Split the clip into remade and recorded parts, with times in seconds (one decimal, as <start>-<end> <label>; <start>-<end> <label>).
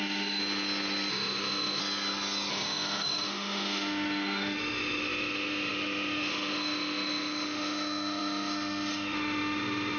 0.0-0.4 remade; 0.4-1.1 recorded; 1.1-1.8 remade; 1.8-2.5 recorded; 2.5-10.0 remade